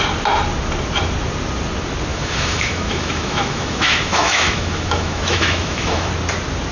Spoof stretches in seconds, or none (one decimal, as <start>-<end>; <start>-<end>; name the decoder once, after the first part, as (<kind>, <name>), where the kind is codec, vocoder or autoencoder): 2.1-6.1 (autoencoder, DAC-VAE)